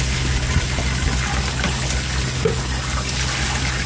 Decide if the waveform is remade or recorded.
recorded